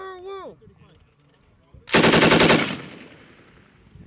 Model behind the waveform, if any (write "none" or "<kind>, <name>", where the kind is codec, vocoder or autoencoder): none